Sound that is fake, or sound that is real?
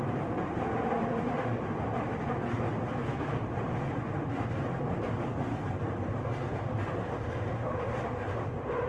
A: real